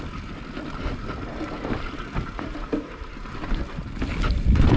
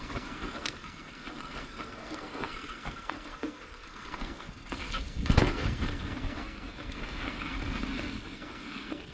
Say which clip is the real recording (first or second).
first